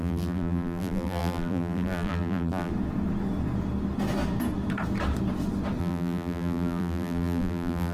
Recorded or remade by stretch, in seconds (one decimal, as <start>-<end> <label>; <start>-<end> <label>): 0.0-2.7 remade; 2.7-5.8 recorded; 5.8-7.9 remade